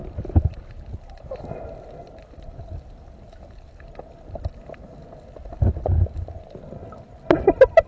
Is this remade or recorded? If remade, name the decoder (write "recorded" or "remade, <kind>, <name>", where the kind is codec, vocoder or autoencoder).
recorded